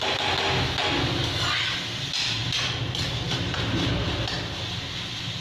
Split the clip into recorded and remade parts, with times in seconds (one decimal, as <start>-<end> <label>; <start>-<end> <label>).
0.0-5.4 recorded